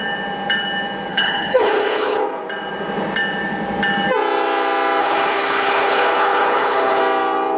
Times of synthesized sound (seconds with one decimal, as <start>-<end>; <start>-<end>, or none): 1.1-2.2; 5.0-7.0